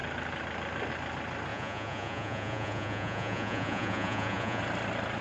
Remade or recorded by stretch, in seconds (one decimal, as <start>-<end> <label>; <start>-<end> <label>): 0.0-1.5 recorded; 1.5-4.6 remade; 4.6-5.2 recorded